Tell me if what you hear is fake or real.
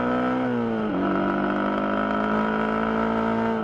real